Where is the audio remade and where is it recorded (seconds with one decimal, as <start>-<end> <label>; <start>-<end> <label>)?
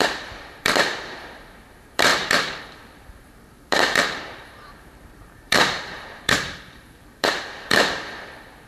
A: 0.0-8.7 remade